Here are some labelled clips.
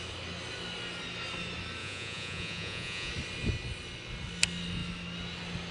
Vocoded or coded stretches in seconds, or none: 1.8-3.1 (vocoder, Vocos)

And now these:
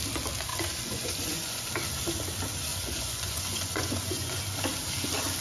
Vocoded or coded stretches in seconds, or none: 0.5-1.7 (vocoder, Vocos); 2.7-4.4

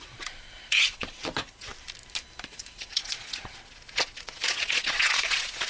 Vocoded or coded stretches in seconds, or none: 0.0-1.7 (vocoder, Vocos); 2.5-5.7